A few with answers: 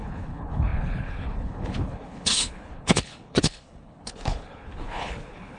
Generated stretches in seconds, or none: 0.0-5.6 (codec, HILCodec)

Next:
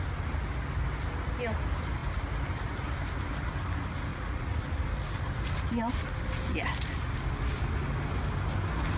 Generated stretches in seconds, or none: 4.1-4.6 (vocoder, Vocos)

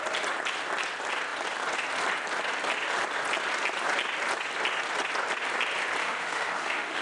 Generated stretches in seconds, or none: 6.0-7.0 (autoencoder, DAC-VAE)

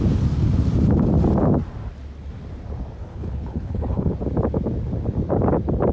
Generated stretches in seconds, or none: 3.0-4.1 (codec, HILCodec)

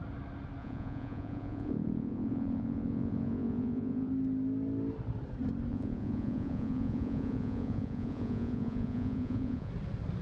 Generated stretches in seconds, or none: 0.6-4.1 (vocoder, Vocos); 5.7-9.7

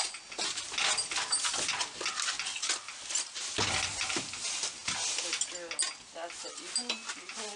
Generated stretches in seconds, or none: none

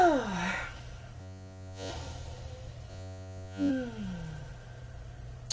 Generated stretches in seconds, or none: 1.2-1.9 (vocoder, Vocos); 2.9-3.7